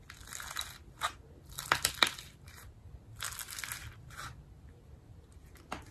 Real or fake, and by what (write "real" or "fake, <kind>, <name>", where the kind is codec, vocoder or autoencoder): real